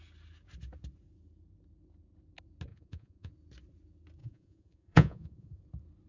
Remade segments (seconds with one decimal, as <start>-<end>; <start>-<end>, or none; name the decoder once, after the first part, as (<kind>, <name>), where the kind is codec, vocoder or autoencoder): 2.7-3.3 (vocoder, Vocos); 4.2-5.6